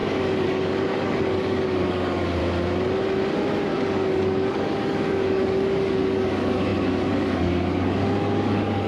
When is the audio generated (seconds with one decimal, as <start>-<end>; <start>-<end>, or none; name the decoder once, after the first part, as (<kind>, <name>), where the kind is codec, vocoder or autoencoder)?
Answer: 0.0-2.4 (codec, DAC); 3.7-8.9